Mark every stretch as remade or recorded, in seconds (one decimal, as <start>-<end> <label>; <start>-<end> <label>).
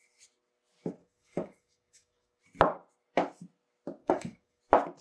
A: 0.0-1.0 recorded; 1.0-2.4 remade; 2.4-4.0 recorded; 4.0-4.6 remade; 4.6-5.0 recorded